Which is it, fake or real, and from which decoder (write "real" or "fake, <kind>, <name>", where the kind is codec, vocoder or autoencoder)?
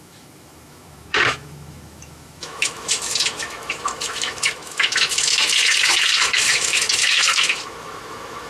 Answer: fake, autoencoder, DAC-VAE